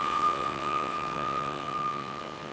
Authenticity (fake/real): fake